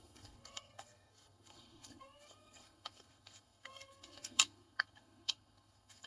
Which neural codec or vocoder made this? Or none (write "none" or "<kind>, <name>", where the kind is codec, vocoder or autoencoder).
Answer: codec, SNAC